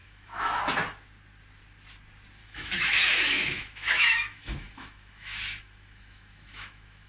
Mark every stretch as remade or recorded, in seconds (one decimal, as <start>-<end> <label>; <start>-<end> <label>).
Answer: 0.0-0.6 remade; 0.6-2.4 recorded; 2.4-7.1 remade